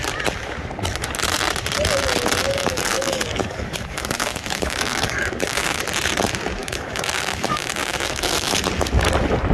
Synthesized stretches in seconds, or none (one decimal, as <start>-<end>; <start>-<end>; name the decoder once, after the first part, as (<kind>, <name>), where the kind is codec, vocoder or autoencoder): 2.5-5.8 (codec, DAC); 6.6-8.6